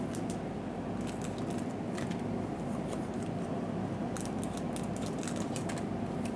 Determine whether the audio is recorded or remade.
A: recorded